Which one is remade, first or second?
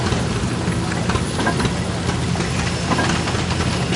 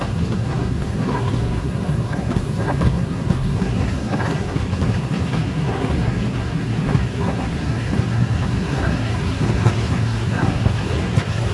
second